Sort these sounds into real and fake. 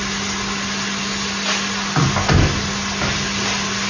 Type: real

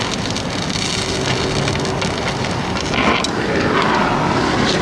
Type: real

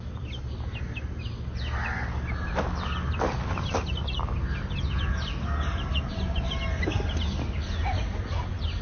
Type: real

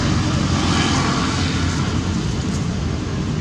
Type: real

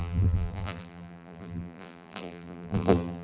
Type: fake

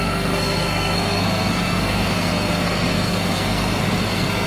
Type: fake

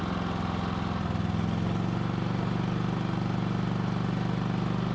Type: real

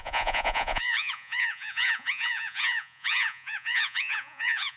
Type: fake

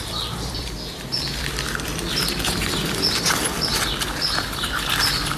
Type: fake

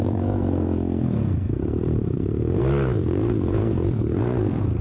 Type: fake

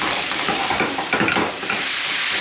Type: fake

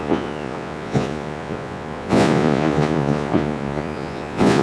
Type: fake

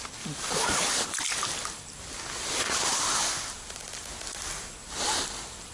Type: real